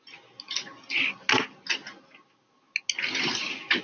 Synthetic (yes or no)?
no